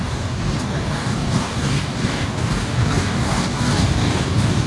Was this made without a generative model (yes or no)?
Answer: no